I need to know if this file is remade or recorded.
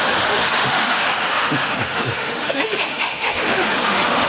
remade